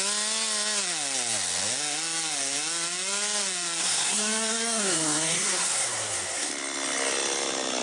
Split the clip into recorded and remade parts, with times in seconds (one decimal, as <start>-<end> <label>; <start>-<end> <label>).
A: 0.0-3.8 recorded; 3.8-6.5 remade; 6.5-7.8 recorded